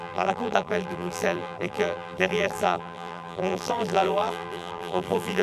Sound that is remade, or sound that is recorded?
remade